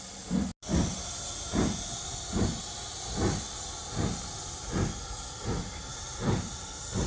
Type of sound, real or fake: real